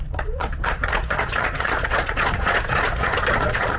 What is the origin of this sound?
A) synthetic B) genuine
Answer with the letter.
A